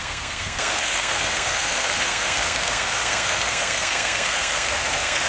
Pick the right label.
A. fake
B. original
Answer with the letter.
A